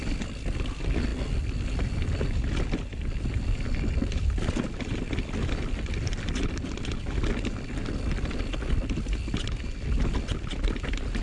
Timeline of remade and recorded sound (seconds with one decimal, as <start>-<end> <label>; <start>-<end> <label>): 0.0-11.2 recorded